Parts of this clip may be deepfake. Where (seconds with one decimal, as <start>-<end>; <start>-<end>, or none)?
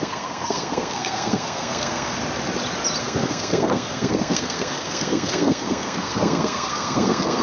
0.0-2.2; 3.0-7.4